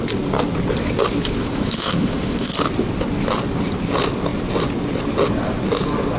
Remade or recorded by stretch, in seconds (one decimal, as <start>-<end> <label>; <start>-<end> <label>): 0.0-1.4 recorded; 1.4-2.5 remade; 2.5-6.2 recorded

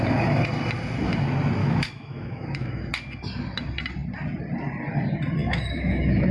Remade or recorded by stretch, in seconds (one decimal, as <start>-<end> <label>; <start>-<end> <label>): 0.0-1.6 recorded; 1.6-2.9 remade; 2.9-5.4 recorded; 5.4-6.3 remade

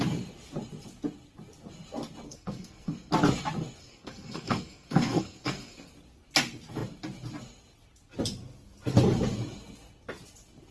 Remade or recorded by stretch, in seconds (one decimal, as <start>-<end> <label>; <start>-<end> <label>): 0.0-2.3 recorded; 2.3-3.1 remade; 3.1-3.8 recorded; 3.8-5.9 remade; 5.9-10.7 recorded

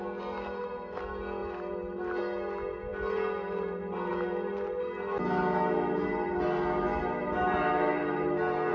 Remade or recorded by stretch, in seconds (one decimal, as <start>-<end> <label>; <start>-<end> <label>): 0.0-8.7 recorded

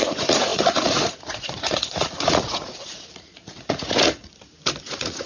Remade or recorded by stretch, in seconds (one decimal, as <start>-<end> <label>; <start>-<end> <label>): 0.0-4.2 remade; 4.2-4.8 recorded; 4.8-5.3 remade